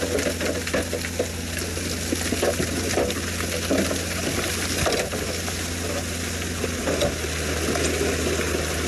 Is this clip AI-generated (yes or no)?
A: no